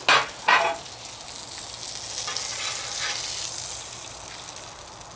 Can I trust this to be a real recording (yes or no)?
yes